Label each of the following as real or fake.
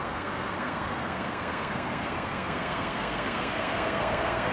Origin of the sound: fake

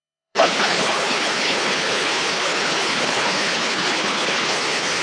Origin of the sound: fake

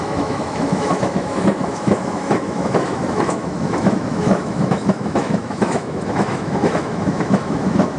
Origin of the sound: fake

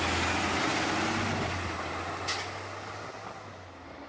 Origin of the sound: real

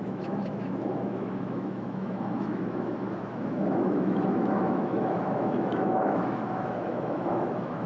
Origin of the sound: fake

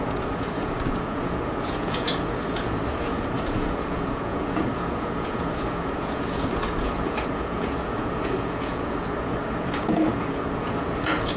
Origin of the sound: fake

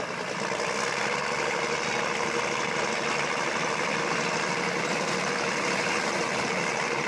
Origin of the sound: fake